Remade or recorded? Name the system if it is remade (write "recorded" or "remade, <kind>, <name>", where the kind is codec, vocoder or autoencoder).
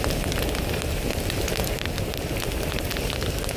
recorded